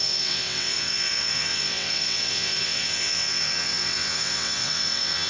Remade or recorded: remade